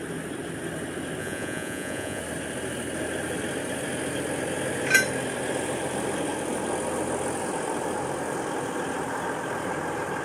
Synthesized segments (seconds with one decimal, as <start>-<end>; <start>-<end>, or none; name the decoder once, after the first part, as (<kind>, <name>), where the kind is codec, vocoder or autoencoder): 1.2-2.2 (vocoder, Vocos)